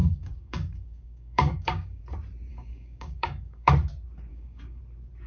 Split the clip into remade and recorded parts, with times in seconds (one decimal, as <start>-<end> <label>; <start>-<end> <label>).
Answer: 0.0-2.0 remade; 2.0-2.5 recorded; 2.5-3.7 remade; 3.7-4.3 recorded; 4.3-4.8 remade; 4.8-5.3 recorded